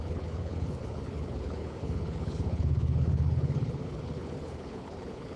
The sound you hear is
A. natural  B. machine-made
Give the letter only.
B